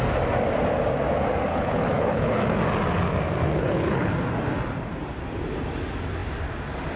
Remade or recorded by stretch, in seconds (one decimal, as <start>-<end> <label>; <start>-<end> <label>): 0.0-1.5 recorded; 1.5-2.4 remade; 2.4-3.6 recorded; 3.6-4.1 remade; 4.1-7.0 recorded